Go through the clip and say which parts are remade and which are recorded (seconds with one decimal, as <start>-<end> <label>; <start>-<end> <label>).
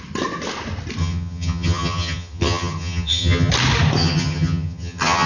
0.0-1.0 recorded; 1.0-3.5 remade; 3.5-4.0 recorded; 4.0-5.3 remade